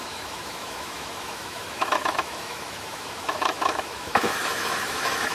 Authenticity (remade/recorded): remade